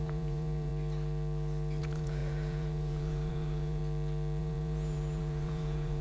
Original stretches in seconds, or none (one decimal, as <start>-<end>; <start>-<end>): 0.7-1.8; 3.8-4.4